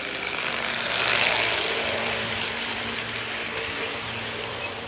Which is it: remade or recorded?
recorded